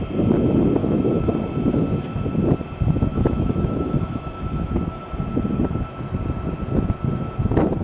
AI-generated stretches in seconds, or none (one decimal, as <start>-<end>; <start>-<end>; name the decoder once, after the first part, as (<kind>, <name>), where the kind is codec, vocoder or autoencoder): 0.8-1.3 (autoencoder, DAC-VAE); 3.1-5.0